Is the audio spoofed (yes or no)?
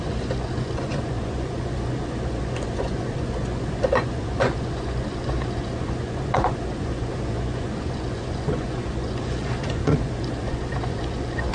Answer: yes